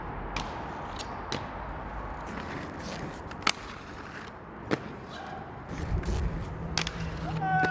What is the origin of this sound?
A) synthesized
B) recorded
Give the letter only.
B